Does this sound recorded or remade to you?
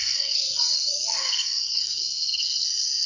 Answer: remade